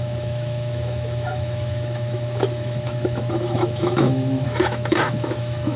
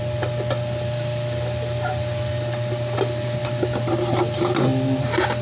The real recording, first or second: second